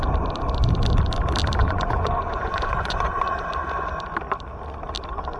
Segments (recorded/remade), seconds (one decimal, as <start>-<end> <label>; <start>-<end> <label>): 0.0-1.6 recorded; 1.6-3.4 remade; 3.4-5.4 recorded